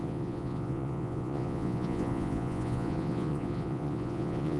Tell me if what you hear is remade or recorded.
remade